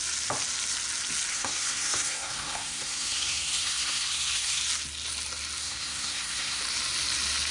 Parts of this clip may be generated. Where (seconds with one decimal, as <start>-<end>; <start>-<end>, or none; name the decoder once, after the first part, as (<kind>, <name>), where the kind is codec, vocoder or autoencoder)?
1.3-4.6 (codec, SNAC); 5.6-6.6